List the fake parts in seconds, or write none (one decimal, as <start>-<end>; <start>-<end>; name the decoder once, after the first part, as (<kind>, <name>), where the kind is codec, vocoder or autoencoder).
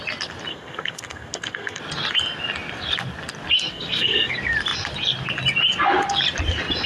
0.5-1.8 (codec, SNAC); 3.7-4.3